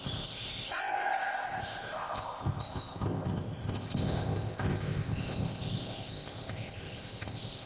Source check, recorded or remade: remade